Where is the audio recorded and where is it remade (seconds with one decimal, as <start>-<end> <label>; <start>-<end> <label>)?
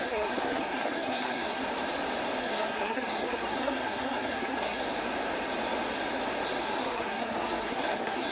0.0-1.6 remade; 1.6-2.4 recorded; 2.4-4.8 remade; 4.8-6.6 recorded; 6.6-8.3 remade